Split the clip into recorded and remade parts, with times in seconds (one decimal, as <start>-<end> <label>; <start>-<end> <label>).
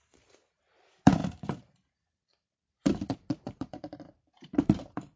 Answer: 0.0-5.2 remade